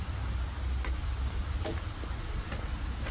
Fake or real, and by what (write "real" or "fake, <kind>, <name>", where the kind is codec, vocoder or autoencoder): real